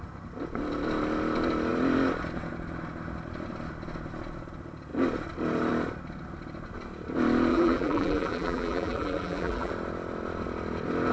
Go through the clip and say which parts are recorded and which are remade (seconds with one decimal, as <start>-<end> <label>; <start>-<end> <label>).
0.0-7.5 recorded; 7.5-9.7 remade; 9.7-11.1 recorded